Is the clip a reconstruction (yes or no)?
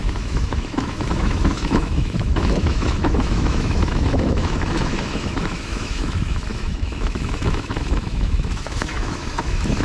yes